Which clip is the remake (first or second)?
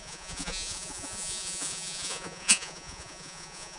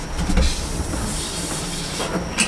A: first